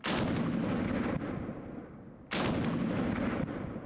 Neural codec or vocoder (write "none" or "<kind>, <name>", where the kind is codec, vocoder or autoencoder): none